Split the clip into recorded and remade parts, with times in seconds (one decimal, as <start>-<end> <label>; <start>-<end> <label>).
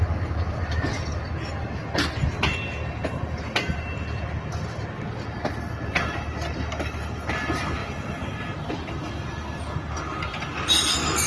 0.0-11.3 recorded